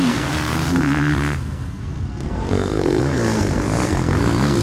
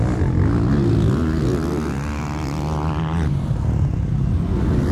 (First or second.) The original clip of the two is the second